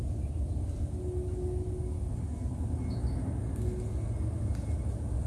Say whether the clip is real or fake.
real